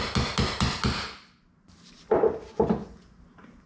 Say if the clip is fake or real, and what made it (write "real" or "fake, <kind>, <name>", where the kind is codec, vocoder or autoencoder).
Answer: real